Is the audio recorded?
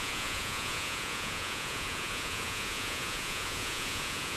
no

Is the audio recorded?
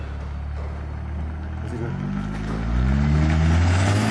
yes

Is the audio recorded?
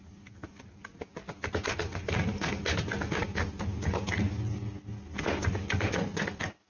yes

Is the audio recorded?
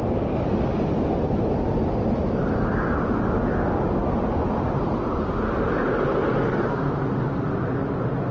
yes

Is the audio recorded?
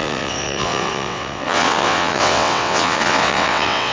no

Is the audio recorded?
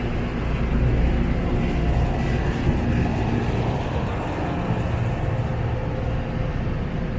yes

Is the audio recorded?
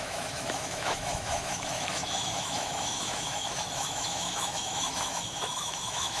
no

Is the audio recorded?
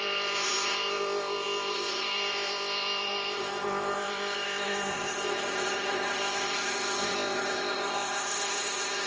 no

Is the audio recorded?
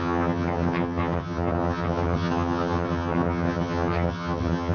no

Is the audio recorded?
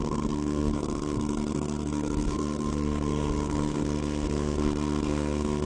no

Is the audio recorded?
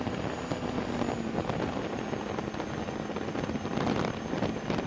yes